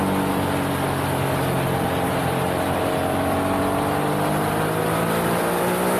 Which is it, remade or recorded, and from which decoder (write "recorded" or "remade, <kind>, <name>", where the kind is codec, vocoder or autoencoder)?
recorded